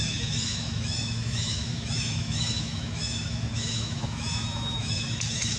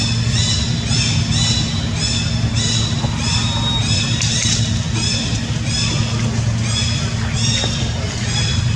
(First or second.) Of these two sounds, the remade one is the first